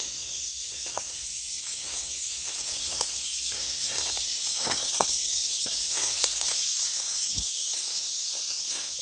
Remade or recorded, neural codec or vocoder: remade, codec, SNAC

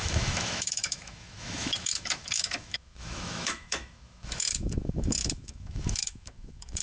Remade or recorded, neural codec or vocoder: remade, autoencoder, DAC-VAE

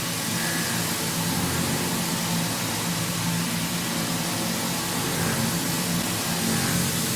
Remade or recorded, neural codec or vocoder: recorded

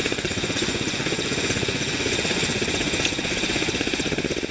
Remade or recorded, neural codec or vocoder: remade, vocoder, Vocos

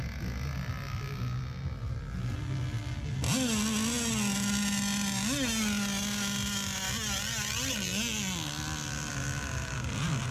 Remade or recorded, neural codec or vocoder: recorded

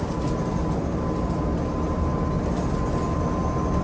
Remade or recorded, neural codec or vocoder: recorded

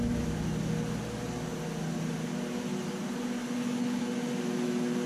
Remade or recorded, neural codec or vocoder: recorded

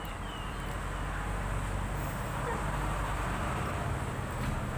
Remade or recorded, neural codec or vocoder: recorded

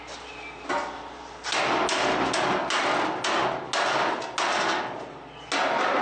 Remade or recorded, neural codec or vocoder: recorded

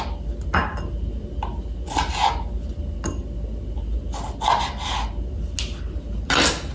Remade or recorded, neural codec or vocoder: recorded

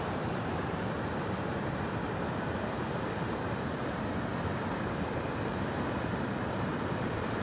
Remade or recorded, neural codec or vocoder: remade, vocoder, BigVGAN v2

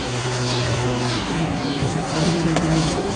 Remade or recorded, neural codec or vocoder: remade, codec, SNAC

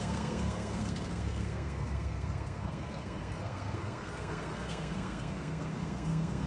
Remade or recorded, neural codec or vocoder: remade, codec, SNAC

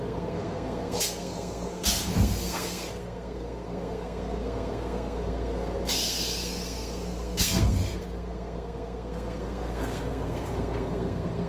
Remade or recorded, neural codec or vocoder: remade, codec, SNAC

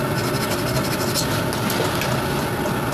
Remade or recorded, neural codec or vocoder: recorded